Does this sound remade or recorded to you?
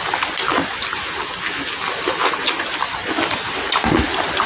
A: recorded